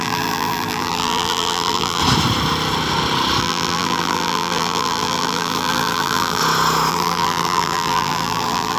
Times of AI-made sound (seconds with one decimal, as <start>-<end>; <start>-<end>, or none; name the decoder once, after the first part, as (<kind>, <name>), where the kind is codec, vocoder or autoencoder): 0.0-2.0 (vocoder, BigVGAN v2); 3.4-6.4; 6.9-8.8